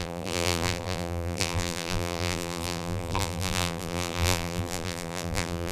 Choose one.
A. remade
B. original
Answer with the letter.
A